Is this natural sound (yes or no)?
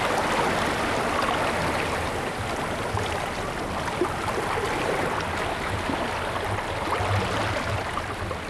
yes